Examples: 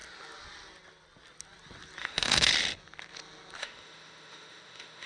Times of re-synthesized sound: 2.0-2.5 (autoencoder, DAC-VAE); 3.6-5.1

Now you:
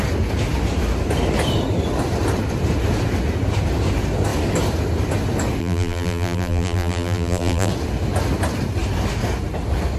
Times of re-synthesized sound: 5.6-7.7 (vocoder, BigVGAN v2)

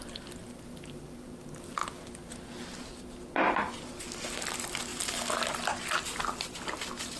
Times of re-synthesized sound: none

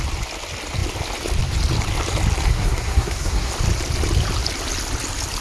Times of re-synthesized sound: 2.5-3.5 (codec, SNAC)

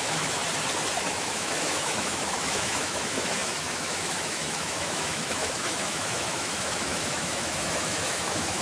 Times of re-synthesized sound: 0.0-0.4 (autoencoder, DAC-VAE); 1.0-8.6

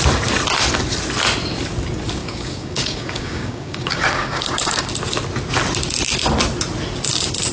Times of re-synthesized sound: 2.2-4.9 (codec, DAC)

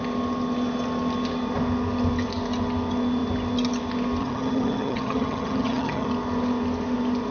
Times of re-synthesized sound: 4.2-6.1 (vocoder, HiFi-GAN)